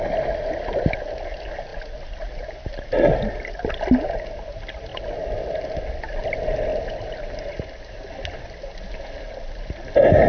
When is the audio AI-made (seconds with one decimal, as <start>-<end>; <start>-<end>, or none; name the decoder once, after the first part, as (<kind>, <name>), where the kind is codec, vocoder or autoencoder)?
none